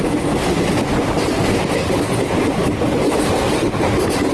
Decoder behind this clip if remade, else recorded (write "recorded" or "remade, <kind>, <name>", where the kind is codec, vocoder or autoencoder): recorded